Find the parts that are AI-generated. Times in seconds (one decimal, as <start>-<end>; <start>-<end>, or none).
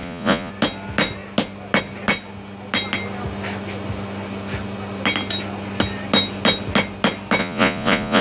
0.0-0.5; 7.4-8.2